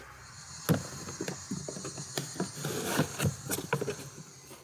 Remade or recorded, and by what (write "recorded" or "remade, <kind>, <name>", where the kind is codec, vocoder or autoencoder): recorded